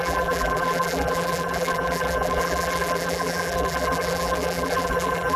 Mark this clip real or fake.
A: fake